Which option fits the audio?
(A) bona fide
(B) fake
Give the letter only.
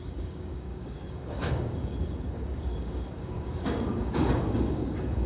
B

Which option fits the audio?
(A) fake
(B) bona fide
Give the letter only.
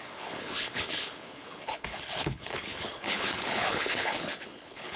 A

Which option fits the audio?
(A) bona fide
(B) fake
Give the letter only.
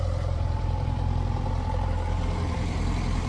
B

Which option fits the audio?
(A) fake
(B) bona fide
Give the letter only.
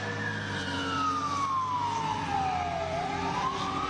B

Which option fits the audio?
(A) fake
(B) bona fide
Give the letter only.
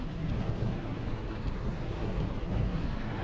A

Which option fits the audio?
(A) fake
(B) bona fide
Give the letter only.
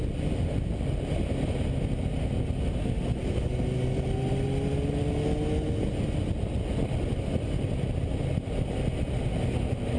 B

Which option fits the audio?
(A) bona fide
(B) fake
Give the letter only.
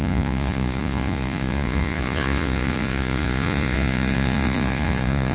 B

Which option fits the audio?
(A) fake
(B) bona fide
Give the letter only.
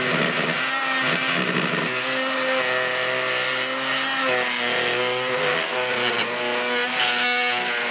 B